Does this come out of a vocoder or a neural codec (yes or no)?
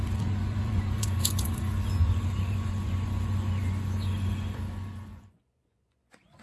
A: yes